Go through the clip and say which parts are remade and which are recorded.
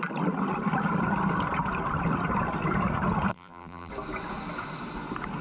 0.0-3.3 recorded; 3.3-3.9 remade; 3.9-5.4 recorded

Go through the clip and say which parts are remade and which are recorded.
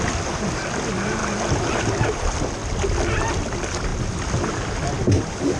0.0-5.6 recorded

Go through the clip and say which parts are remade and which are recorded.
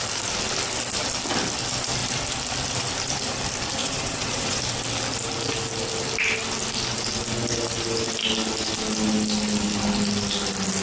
0.0-3.8 recorded; 3.8-4.6 remade; 4.6-10.8 recorded